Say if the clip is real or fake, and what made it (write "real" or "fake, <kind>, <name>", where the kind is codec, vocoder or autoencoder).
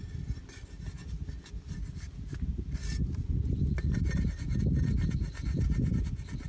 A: real